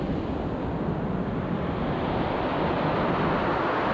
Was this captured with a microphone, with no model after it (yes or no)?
yes